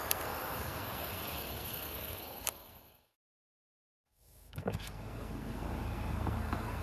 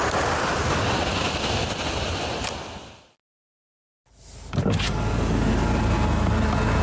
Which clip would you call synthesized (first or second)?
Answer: first